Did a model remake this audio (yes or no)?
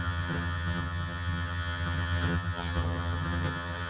yes